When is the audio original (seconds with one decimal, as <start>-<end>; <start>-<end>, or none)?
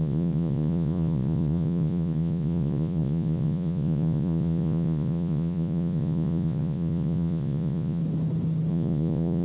8.0-8.7